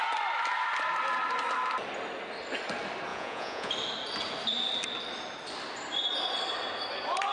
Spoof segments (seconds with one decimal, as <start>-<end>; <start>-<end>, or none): 3.1-3.7